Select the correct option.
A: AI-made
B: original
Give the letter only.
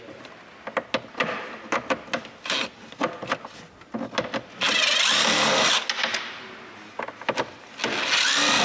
B